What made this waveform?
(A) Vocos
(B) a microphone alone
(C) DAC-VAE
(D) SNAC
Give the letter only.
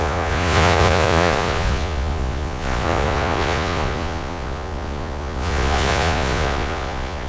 A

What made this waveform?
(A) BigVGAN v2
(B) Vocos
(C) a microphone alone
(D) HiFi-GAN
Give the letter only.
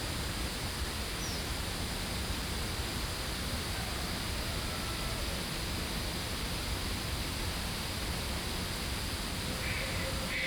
C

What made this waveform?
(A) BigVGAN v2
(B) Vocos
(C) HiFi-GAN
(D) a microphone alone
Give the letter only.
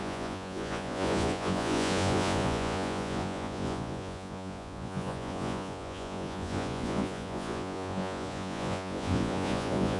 B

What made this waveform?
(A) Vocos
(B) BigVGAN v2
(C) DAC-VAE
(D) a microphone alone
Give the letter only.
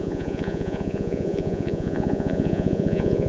A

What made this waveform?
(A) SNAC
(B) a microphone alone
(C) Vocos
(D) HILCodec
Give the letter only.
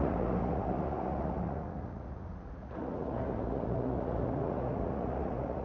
C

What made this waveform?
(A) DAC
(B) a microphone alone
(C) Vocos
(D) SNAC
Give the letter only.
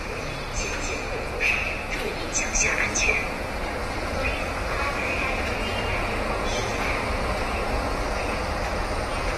C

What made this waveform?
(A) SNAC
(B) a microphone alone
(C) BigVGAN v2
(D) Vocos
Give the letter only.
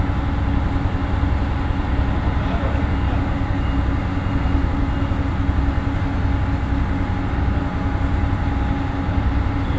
B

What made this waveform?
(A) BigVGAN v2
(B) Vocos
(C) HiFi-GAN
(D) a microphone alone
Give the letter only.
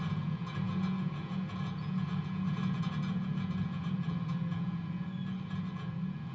B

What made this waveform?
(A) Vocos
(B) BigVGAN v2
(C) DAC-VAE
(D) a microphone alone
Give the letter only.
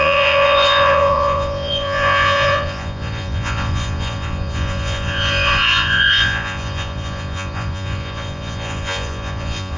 A